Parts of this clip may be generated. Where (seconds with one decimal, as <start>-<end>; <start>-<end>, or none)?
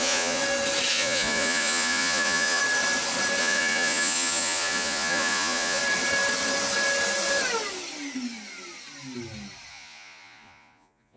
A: 0.0-0.4; 0.9-2.6; 3.4-5.8; 9.7-11.2